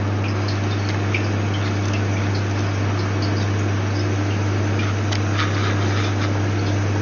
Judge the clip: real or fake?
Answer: real